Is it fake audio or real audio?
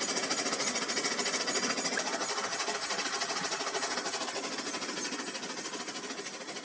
real